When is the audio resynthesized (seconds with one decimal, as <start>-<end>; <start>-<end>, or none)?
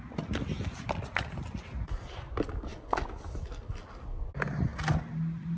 none